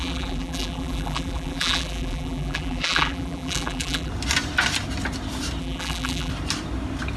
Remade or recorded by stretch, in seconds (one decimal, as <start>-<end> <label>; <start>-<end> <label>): 0.0-4.1 remade; 4.1-5.6 recorded; 5.6-6.3 remade; 6.3-7.2 recorded